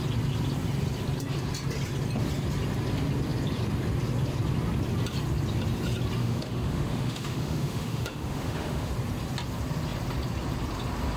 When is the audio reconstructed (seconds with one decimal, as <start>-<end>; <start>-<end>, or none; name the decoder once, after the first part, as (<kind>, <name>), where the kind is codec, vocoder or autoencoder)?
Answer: 6.2-8.9 (autoencoder, DAC-VAE)